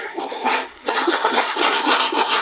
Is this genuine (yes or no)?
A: no